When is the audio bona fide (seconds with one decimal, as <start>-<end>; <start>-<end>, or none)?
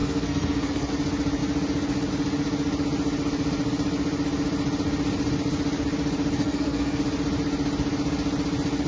0.9-6.4; 7.0-8.9